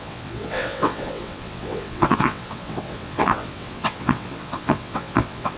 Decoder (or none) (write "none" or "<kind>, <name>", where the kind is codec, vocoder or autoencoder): vocoder, WaveNeXt